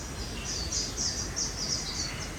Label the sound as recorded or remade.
recorded